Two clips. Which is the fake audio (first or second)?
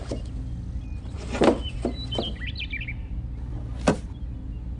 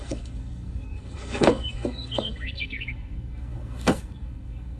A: second